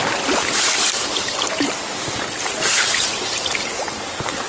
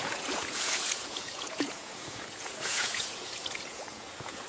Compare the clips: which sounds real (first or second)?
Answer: first